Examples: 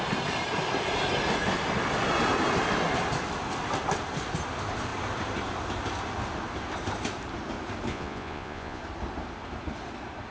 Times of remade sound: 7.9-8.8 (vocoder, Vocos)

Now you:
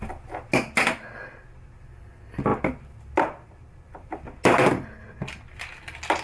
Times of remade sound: none

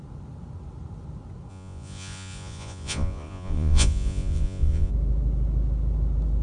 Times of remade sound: 1.5-4.9 (vocoder, Vocos)

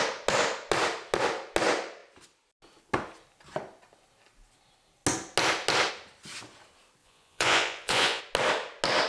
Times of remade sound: 7.0-8.2 (vocoder, Vocos)